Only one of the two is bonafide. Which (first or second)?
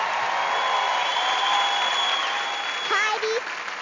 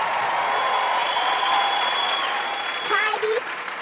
first